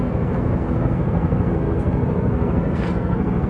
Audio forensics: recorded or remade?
remade